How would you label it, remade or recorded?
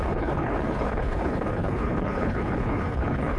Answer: remade